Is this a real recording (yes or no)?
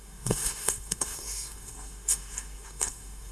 no